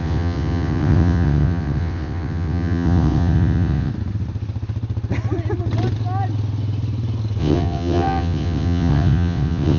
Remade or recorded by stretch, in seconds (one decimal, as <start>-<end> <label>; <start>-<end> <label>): 0.0-3.9 remade; 3.9-7.4 recorded; 7.4-9.8 remade